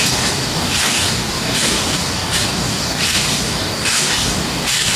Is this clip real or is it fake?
fake